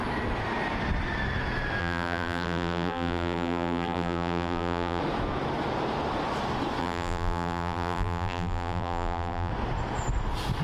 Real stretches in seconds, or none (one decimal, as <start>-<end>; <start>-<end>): 0.0-1.8; 5.0-6.8; 9.5-10.6